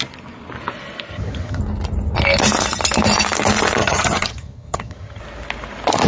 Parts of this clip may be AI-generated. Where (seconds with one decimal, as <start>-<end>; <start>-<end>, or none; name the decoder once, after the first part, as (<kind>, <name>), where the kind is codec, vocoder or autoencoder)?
1.1-1.6 (vocoder, HiFi-GAN); 3.8-5.2